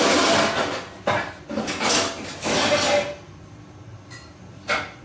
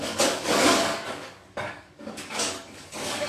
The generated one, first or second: second